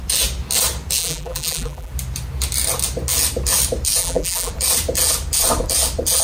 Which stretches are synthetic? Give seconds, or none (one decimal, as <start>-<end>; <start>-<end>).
1.0-1.9; 4.0-4.5